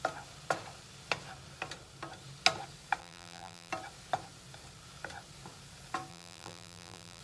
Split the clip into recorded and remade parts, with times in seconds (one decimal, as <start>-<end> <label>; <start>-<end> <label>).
0.0-3.0 recorded; 3.0-3.7 remade; 3.7-6.1 recorded; 6.1-7.2 remade